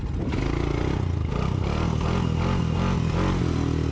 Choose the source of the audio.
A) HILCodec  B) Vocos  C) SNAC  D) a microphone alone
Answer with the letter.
D